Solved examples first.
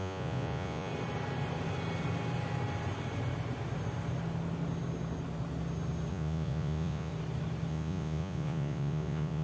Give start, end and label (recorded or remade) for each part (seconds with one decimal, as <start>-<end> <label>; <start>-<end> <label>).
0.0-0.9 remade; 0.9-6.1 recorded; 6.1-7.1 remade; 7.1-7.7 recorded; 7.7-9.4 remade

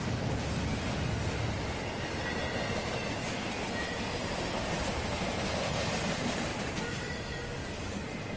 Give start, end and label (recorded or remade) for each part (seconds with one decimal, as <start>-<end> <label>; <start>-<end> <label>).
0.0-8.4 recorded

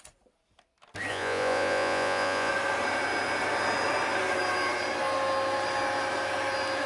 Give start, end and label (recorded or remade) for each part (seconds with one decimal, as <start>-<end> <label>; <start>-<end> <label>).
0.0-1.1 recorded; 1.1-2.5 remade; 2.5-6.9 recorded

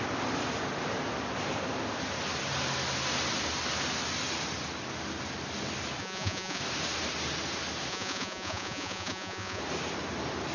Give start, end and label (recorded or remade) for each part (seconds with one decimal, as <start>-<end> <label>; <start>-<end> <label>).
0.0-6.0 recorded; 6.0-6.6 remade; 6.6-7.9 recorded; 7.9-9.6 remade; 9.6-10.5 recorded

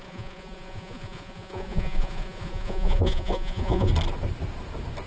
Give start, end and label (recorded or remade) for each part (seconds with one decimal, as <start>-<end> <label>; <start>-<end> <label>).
0.0-3.9 remade; 3.9-5.1 recorded

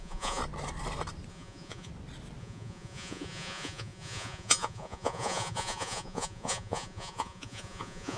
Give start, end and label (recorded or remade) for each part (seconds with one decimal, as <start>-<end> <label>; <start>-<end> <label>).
0.0-0.4 remade; 0.4-1.3 recorded; 1.3-1.9 remade; 1.9-2.4 recorded; 2.4-8.2 remade

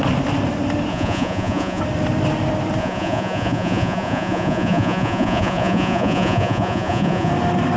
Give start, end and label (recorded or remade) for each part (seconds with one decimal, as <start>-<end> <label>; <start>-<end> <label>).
0.0-0.9 recorded; 0.9-1.8 remade; 1.8-2.8 recorded; 2.8-7.3 remade; 7.3-7.8 recorded

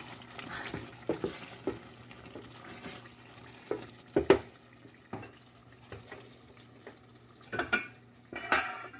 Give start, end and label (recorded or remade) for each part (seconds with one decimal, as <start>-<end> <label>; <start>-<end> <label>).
0.0-9.0 recorded